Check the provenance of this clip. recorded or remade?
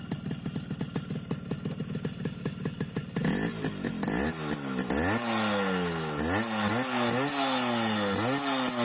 recorded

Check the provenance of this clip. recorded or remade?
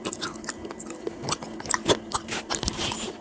recorded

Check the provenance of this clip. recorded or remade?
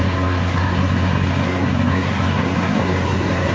remade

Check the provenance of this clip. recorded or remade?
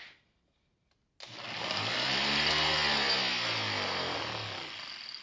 recorded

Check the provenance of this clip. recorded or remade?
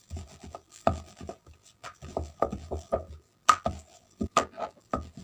remade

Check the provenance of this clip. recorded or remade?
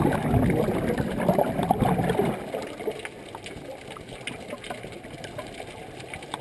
recorded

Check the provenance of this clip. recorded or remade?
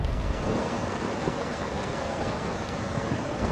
remade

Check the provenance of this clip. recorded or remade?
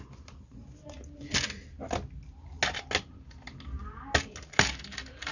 recorded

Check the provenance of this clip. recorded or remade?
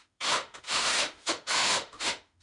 remade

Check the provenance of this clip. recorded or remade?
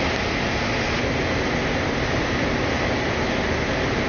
recorded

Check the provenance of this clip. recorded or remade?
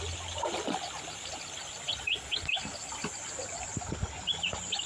recorded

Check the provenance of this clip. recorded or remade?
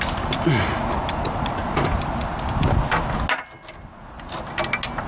recorded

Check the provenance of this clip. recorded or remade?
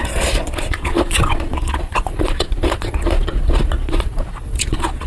remade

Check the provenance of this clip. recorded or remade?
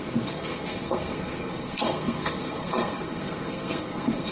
remade